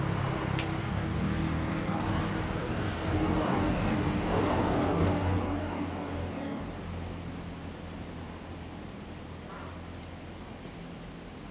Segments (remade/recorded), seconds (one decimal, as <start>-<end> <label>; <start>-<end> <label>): 0.0-0.8 recorded; 0.8-2.2 remade; 2.2-2.6 recorded; 2.6-6.6 remade; 6.6-11.5 recorded